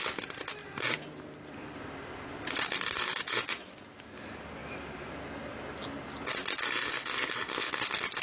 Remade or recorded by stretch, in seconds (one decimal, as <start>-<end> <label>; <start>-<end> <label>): 0.0-8.2 recorded